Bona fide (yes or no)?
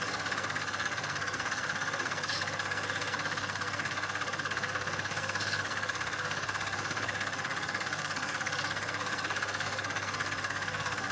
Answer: no